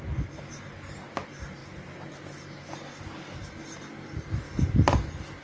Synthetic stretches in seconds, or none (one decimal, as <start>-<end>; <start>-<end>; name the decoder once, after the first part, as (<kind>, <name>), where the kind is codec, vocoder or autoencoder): none